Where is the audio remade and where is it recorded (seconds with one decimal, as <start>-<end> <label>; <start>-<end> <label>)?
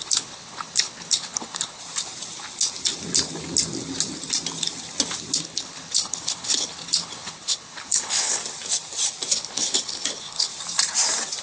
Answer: 0.0-1.8 remade; 1.8-5.4 recorded; 5.4-8.4 remade; 8.4-9.3 recorded; 9.3-10.5 remade; 10.5-11.4 recorded